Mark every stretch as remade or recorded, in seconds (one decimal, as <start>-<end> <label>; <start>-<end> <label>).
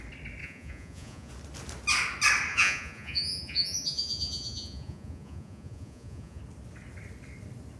0.0-0.4 recorded; 0.4-1.3 remade; 1.3-2.5 recorded; 2.5-6.4 remade; 6.4-7.8 recorded